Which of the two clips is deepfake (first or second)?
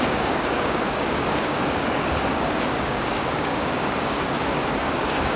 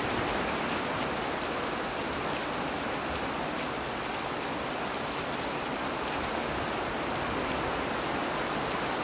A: first